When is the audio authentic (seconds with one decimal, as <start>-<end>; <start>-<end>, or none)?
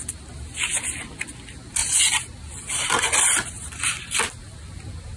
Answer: 0.0-5.2